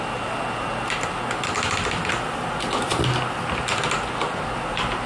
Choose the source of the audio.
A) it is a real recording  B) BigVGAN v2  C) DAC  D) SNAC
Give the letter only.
A